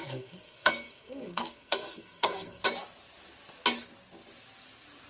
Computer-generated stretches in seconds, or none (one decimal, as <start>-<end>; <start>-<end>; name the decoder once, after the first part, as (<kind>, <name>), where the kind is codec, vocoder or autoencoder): 0.0-2.6 (codec, SNAC)